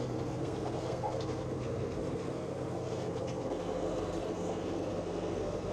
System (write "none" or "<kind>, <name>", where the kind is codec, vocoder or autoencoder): codec, SNAC